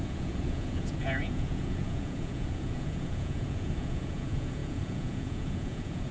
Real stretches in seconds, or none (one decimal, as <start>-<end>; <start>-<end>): none